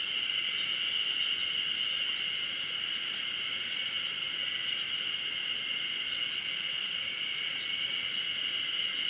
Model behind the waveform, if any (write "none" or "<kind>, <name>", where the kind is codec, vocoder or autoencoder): none